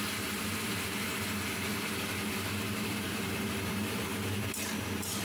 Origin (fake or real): real